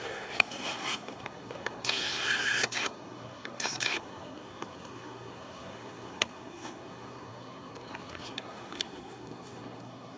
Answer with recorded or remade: remade